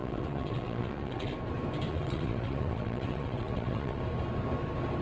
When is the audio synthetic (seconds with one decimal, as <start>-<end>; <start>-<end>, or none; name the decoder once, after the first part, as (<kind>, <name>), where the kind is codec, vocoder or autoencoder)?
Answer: 0.0-1.3 (vocoder, WaveNeXt); 1.9-4.0